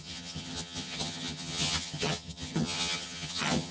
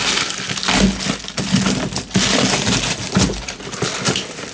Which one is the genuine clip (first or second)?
second